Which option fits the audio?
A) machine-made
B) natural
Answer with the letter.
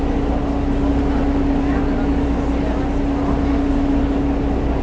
B